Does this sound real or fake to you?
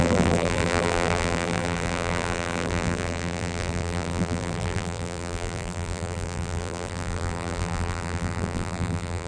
fake